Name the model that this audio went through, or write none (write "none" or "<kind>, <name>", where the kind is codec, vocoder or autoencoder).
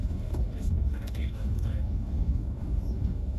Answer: codec, DAC